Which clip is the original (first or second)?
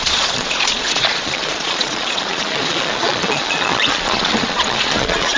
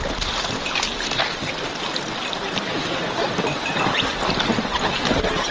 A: second